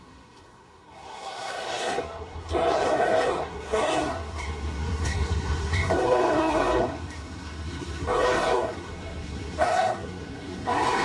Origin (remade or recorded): remade